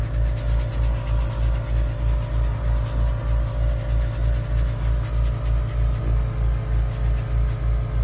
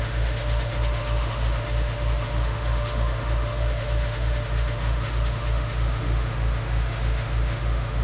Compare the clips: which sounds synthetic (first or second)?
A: second